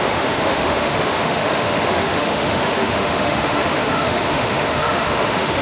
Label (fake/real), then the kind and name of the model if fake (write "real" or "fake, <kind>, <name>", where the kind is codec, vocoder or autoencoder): fake, autoencoder, DAC-VAE